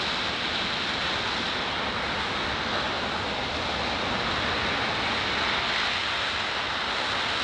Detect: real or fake real